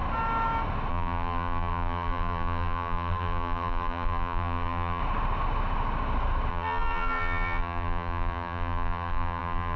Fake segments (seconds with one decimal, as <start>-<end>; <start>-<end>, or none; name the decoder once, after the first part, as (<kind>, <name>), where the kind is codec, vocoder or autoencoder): 0.9-5.0 (vocoder, BigVGAN v2); 6.5-9.8